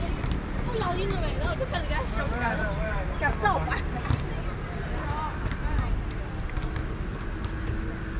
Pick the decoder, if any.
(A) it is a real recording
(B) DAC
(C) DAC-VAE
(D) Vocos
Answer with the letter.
A